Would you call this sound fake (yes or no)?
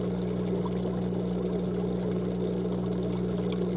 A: no